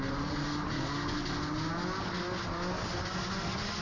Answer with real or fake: real